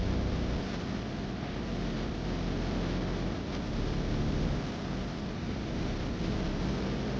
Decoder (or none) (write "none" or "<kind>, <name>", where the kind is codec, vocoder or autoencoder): none